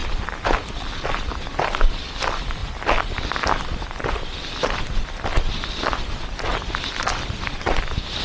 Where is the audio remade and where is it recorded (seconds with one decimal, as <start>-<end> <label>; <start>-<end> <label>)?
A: 0.0-0.6 recorded; 0.6-2.6 remade; 2.6-3.3 recorded; 3.3-8.2 remade